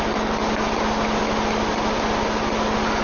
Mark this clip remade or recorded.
recorded